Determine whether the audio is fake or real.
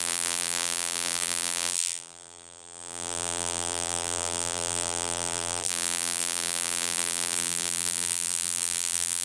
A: fake